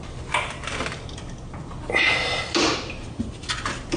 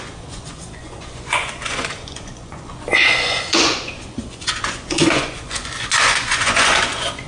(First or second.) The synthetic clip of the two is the second